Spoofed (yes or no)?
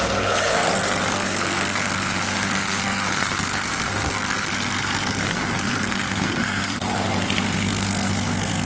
yes